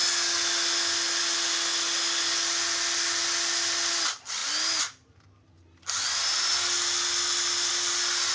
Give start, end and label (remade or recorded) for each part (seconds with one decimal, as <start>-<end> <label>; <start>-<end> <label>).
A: 0.0-8.3 recorded